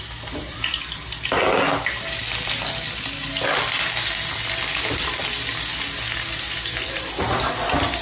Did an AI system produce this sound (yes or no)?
no